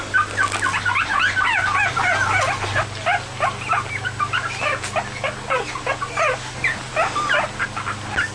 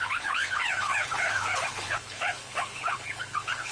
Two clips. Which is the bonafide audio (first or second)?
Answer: first